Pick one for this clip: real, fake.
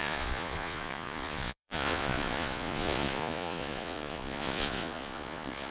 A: fake